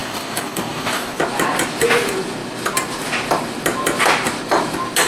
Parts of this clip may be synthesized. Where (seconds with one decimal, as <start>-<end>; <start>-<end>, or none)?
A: 0.0-1.2